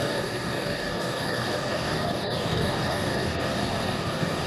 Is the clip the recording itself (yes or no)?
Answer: no